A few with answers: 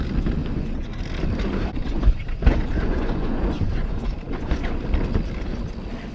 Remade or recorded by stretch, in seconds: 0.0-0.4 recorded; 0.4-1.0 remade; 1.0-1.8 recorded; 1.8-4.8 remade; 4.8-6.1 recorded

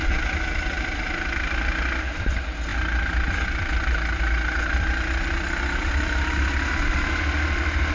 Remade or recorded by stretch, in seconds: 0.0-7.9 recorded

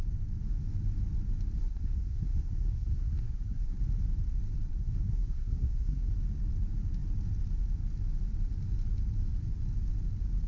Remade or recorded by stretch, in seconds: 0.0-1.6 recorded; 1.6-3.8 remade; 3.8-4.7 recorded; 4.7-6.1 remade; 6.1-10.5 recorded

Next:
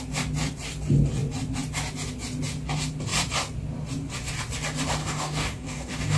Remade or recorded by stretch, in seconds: 0.0-5.0 recorded; 5.0-6.2 remade